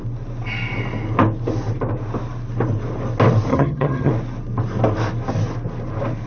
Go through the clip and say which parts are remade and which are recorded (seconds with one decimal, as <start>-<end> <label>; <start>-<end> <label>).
0.0-3.5 recorded; 3.5-4.1 remade; 4.1-6.3 recorded